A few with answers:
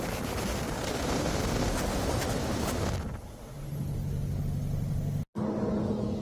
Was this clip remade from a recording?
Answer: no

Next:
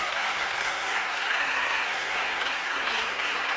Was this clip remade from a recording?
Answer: yes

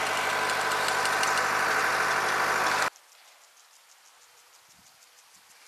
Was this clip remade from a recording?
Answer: no